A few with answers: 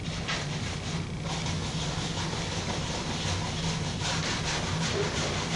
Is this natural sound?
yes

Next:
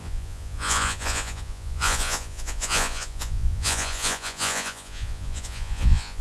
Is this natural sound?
no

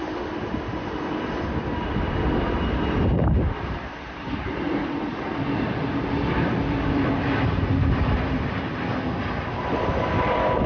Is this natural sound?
no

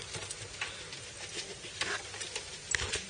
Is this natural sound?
yes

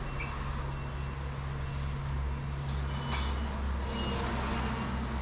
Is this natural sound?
yes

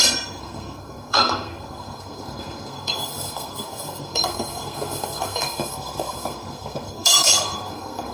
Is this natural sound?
no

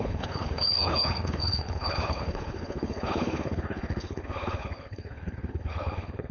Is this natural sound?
no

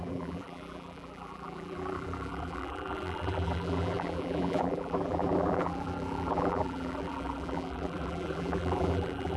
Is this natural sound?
no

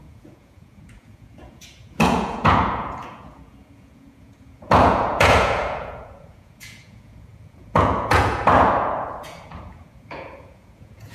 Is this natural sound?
no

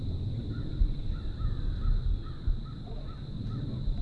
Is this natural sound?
yes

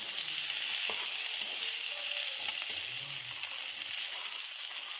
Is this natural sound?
yes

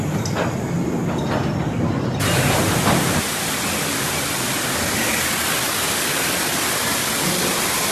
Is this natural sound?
yes